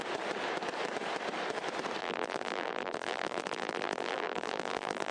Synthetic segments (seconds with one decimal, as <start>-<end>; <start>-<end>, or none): 2.0-5.1